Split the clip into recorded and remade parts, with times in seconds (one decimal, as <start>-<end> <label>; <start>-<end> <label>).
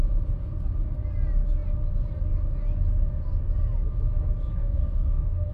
0.0-4.6 recorded; 4.6-5.5 remade